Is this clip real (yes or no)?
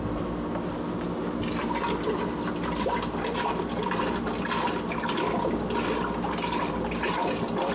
yes